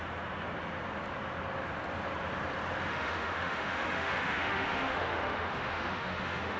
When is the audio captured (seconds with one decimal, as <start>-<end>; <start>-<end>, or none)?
0.0-2.9